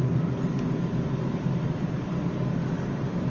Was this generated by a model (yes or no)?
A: no